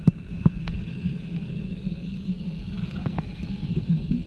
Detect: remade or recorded remade